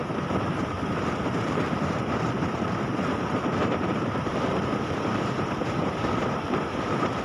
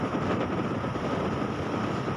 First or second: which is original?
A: second